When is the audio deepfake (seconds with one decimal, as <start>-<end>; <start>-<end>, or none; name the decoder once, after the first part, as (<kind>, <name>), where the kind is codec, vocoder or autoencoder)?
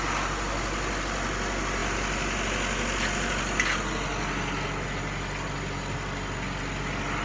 none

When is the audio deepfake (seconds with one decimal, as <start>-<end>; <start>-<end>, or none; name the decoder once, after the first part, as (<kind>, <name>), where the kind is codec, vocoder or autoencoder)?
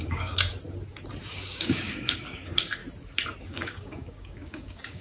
0.0-0.5 (codec, DAC); 1.3-2.8; 3.4-5.0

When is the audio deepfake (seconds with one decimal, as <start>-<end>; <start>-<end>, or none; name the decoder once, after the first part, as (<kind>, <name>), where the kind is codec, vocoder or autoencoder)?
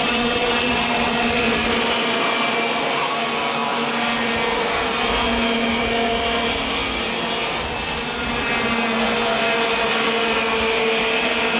0.0-1.4 (vocoder, WaveNeXt)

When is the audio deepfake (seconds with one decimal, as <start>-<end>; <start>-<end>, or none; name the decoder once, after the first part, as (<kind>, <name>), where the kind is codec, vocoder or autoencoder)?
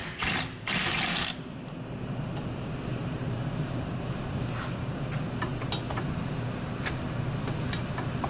0.0-1.2 (vocoder, BigVGAN v2); 2.9-4.4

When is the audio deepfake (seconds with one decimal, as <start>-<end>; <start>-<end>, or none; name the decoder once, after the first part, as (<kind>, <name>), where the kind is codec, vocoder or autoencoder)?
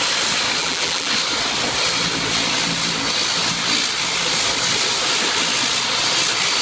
0.6-1.1 (vocoder, BigVGAN v2)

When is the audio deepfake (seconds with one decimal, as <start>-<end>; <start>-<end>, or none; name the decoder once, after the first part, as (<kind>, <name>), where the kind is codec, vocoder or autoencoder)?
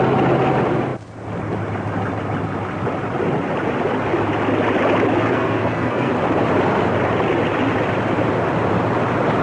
5.2-6.1 (codec, SNAC)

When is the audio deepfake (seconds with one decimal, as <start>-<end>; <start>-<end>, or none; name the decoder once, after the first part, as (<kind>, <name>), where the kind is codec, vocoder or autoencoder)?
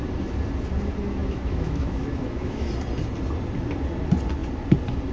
1.2-2.7 (autoencoder, DAC-VAE)